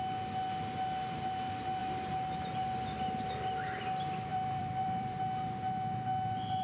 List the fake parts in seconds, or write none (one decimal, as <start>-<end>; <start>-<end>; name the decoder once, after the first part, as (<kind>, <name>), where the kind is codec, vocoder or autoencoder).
4.3-5.2 (vocoder, BigVGAN v2)